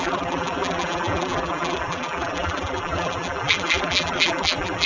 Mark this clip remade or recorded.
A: remade